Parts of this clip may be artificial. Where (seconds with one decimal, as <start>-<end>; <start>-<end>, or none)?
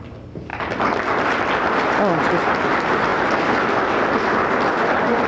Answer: none